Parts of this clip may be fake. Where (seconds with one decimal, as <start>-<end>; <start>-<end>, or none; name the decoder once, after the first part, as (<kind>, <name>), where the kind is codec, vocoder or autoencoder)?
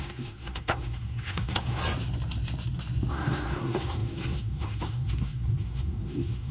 0.0-1.8 (codec, SNAC); 3.1-6.5